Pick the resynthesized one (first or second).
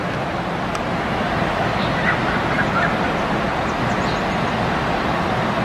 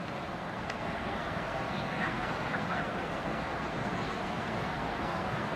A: second